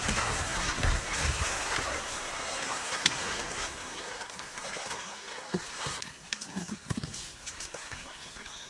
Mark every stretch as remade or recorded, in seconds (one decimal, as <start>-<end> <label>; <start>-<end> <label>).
0.0-8.7 remade